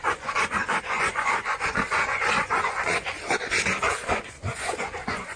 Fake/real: fake